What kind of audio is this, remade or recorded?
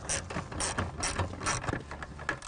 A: recorded